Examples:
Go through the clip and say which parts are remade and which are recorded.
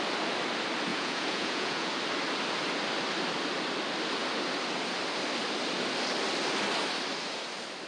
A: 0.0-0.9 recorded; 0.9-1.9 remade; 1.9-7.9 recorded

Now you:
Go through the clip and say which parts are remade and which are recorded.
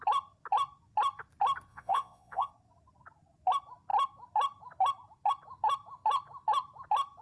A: 0.0-1.7 recorded; 1.7-2.5 remade; 2.5-7.2 recorded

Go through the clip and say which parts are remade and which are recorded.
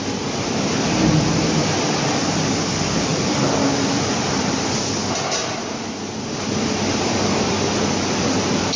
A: 0.0-8.8 recorded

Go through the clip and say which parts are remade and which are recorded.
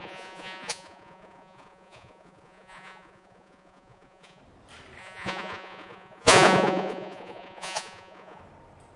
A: 0.0-4.4 remade; 4.4-5.0 recorded; 5.0-8.4 remade; 8.4-9.0 recorded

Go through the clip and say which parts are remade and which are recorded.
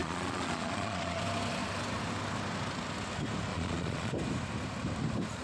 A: 0.0-1.2 remade; 1.2-3.5 recorded; 3.5-4.1 remade; 4.1-5.4 recorded